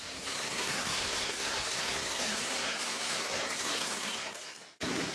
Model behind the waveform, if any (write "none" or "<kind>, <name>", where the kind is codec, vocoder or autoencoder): codec, SNAC